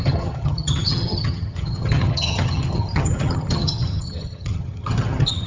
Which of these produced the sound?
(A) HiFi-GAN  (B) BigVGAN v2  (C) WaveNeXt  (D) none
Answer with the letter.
A